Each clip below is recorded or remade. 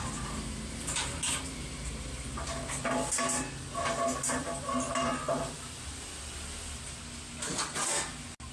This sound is recorded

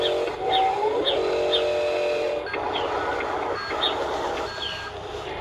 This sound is recorded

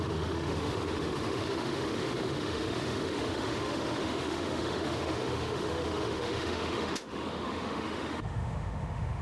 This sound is remade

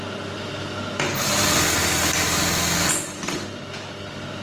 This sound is recorded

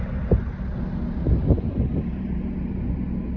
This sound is recorded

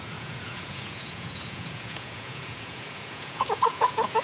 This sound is remade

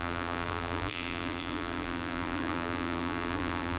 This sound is remade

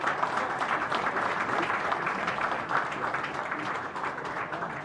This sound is remade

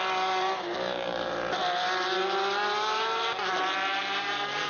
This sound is remade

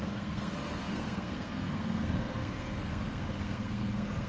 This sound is remade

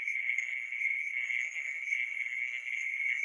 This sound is remade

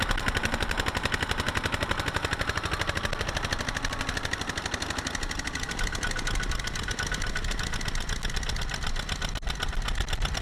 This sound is recorded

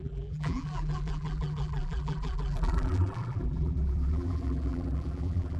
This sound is remade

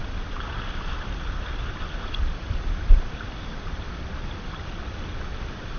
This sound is remade